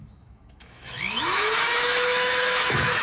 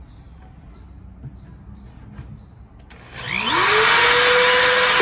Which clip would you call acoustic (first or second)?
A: second